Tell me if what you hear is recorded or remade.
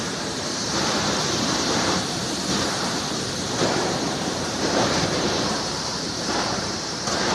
remade